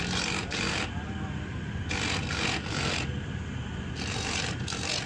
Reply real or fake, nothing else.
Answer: real